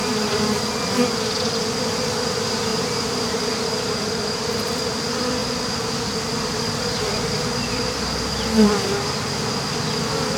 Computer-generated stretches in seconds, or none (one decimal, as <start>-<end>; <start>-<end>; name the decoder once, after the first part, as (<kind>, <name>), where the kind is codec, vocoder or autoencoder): 2.7-5.0 (vocoder, BigVGAN v2); 5.4-9.2